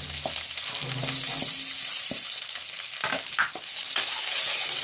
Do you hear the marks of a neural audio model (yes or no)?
no